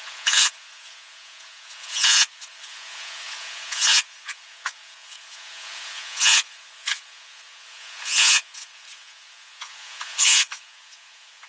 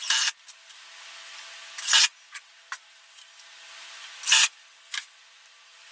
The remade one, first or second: first